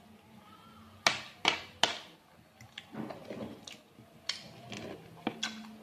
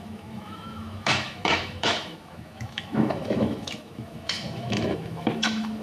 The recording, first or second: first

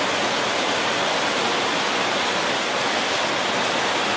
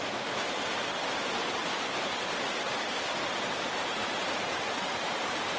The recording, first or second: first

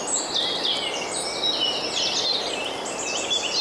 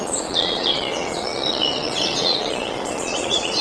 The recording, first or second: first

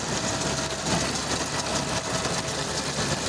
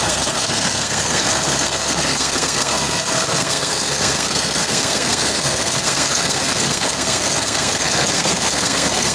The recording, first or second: first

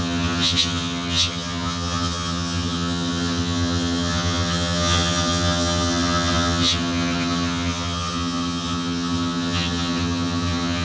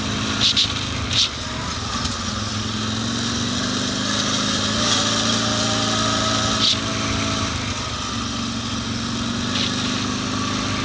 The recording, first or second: second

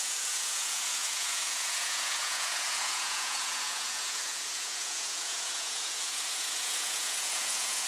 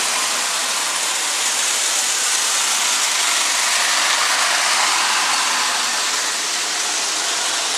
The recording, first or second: second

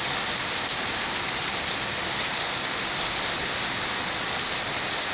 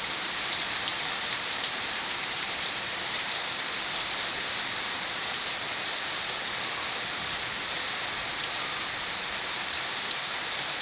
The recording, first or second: first